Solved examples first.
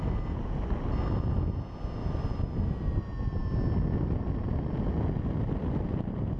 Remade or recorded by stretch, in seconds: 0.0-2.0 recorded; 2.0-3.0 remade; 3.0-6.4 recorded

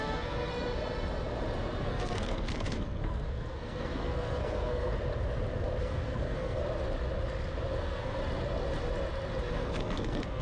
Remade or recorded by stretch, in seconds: 0.0-0.5 remade; 0.5-1.8 recorded; 1.8-4.9 remade; 4.9-5.8 recorded; 5.8-6.6 remade; 6.6-7.8 recorded; 7.8-8.2 remade; 8.2-9.5 recorded; 9.5-10.4 remade